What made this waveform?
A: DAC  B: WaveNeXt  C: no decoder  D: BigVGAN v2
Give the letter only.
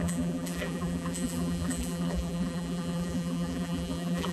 D